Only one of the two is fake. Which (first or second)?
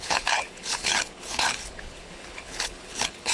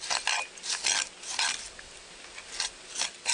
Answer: first